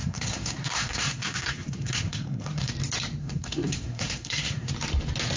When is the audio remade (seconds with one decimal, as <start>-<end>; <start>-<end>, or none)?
0.0-2.7; 3.2-4.7